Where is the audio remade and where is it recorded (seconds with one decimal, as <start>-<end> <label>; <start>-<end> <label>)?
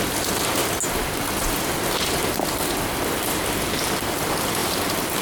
0.0-5.2 recorded